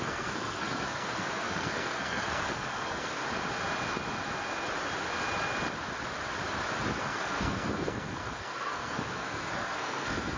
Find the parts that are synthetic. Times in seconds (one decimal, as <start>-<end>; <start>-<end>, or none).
0.0-3.2; 7.0-10.4